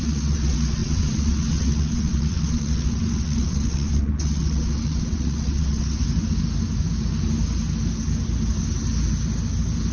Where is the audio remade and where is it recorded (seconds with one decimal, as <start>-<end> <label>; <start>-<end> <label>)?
0.0-6.0 remade; 6.0-9.9 recorded